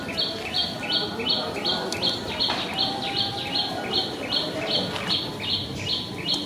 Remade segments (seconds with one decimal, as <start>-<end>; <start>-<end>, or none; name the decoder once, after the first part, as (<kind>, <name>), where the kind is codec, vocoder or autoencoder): none